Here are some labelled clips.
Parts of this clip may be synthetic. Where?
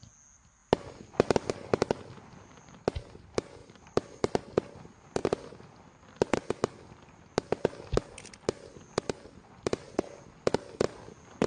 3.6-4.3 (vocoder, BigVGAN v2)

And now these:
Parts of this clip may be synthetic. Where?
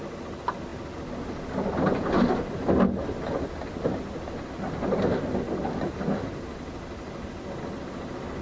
none